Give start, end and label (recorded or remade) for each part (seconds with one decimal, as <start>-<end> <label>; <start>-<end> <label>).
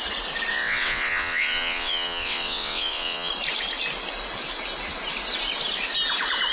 0.0-0.5 recorded; 0.5-3.3 remade; 3.3-6.5 recorded